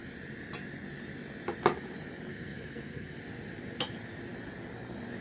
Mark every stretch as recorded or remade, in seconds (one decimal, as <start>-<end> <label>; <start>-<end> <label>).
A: 0.0-2.3 recorded; 2.3-3.2 remade; 3.2-5.2 recorded